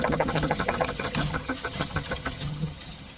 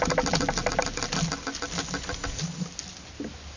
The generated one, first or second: first